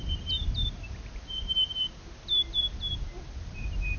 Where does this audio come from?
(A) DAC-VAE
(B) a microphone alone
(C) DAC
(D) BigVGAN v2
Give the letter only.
B